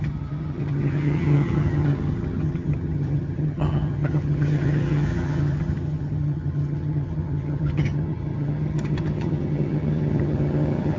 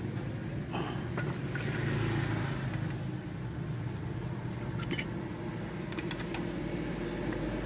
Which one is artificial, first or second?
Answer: first